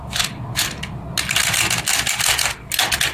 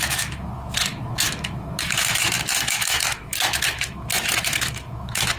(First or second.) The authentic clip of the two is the first